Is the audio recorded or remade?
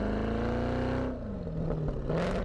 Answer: recorded